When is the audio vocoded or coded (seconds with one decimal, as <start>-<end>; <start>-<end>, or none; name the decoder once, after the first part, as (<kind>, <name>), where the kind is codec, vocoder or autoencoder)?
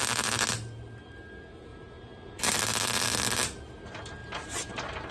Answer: none